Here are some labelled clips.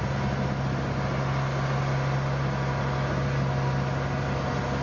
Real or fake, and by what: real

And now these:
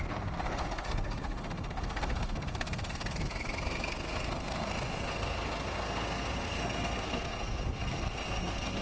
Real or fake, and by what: fake, codec, SNAC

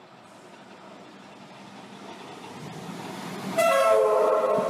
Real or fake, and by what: real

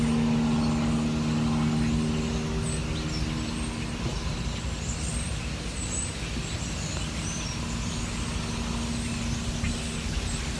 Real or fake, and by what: real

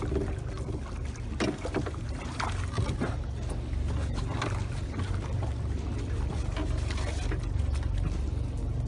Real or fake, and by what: real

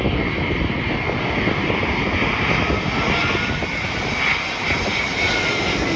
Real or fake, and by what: real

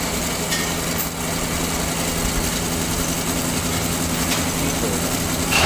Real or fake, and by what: real